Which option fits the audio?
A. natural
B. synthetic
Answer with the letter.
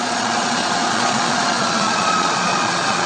B